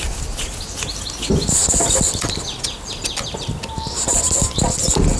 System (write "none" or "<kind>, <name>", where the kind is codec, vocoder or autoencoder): none